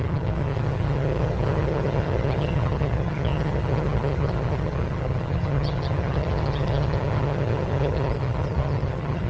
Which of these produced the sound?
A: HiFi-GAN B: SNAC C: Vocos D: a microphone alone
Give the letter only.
A